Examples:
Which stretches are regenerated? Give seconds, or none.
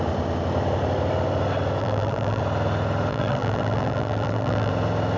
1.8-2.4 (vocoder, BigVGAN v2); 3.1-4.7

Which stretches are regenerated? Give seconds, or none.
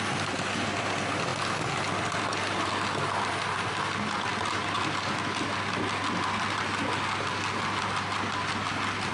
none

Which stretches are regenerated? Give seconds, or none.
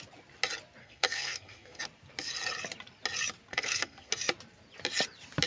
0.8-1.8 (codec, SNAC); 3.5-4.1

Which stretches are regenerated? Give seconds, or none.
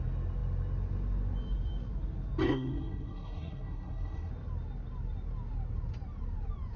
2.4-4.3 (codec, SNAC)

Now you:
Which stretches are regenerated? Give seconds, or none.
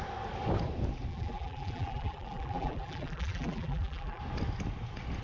1.1-4.2 (vocoder, BigVGAN v2)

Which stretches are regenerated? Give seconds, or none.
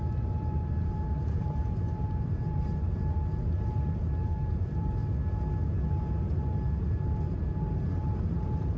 0.0-5.0 (vocoder, BigVGAN v2); 6.5-8.8